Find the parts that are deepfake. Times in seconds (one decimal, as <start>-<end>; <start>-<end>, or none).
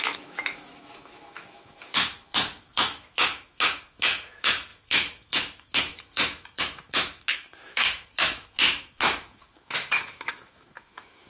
0.0-11.3